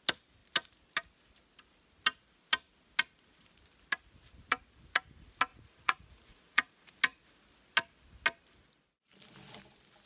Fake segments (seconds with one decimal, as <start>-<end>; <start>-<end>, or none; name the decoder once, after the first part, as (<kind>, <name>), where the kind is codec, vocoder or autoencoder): 5.5-7.0 (vocoder, Vocos)